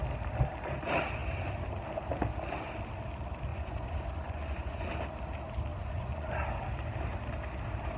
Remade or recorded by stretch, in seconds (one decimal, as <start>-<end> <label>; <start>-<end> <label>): 0.0-3.5 recorded; 3.5-4.9 remade; 4.9-5.7 recorded; 5.7-6.3 remade; 6.3-8.0 recorded